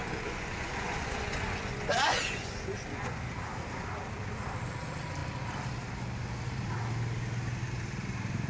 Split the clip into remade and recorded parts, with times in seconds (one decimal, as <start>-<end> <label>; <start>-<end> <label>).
0.0-3.2 remade; 3.2-8.5 recorded